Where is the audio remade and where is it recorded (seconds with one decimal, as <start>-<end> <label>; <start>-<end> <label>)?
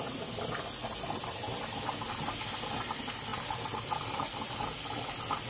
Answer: 0.0-5.5 recorded